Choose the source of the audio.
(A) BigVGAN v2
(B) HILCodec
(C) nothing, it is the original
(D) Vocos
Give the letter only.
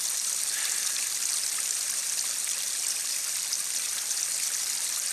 A